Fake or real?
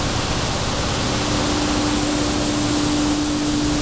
real